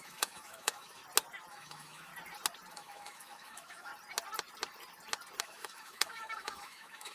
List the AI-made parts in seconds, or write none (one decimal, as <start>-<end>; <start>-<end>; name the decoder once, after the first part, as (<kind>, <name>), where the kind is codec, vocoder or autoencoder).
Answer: 0.0-1.0 (autoencoder, DAC-VAE); 1.5-2.1; 2.7-3.9; 5.4-7.1

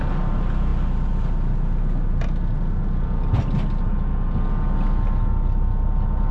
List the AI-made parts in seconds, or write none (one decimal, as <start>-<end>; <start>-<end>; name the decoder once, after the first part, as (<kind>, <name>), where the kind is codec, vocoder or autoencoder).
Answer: none

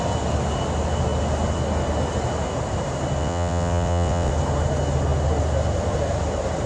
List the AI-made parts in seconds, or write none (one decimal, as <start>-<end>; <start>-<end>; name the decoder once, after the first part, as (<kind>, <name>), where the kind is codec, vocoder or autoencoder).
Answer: 3.2-4.3 (vocoder, WaveNeXt)

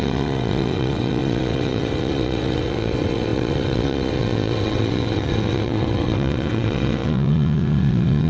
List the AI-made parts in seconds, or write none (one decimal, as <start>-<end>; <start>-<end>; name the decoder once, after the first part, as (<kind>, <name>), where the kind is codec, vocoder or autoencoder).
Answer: 0.0-8.3 (vocoder, WaveNeXt)

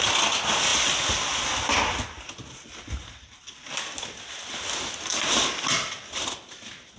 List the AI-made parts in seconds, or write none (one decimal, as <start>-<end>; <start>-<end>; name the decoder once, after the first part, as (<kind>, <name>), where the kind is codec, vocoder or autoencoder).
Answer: none